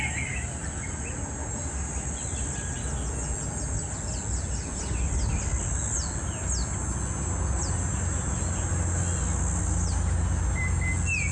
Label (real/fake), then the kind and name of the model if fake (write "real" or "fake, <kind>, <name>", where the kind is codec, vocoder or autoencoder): real